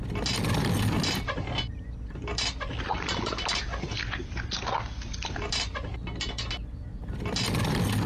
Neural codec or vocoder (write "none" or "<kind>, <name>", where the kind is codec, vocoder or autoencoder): none